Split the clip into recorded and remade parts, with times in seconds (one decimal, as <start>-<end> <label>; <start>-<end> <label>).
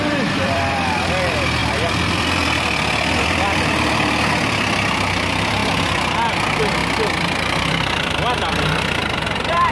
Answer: 0.0-5.6 remade; 5.6-6.3 recorded; 6.3-9.7 remade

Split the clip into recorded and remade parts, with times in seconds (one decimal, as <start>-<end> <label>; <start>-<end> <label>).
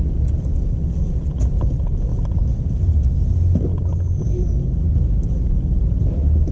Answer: 0.0-6.5 recorded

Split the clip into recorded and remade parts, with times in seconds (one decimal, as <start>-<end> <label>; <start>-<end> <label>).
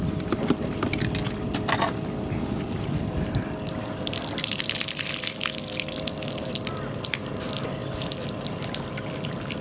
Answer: 0.0-9.6 recorded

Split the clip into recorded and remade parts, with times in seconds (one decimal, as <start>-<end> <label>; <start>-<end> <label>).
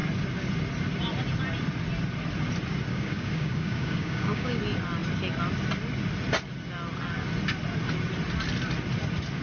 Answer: 0.0-2.9 recorded; 2.9-4.6 remade; 4.6-9.4 recorded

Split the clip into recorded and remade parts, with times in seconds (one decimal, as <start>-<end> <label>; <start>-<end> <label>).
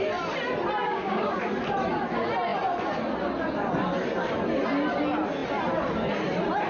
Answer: 0.0-0.8 recorded; 0.8-1.4 remade; 1.4-6.7 recorded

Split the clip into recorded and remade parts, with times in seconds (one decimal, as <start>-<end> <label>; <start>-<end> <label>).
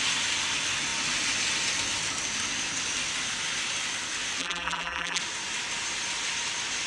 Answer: 0.0-4.4 recorded; 4.4-5.2 remade; 5.2-6.9 recorded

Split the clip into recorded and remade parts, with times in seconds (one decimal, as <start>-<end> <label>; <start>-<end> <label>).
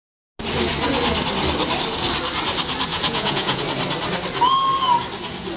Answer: 0.0-2.9 recorded; 2.9-3.6 remade; 3.6-5.6 recorded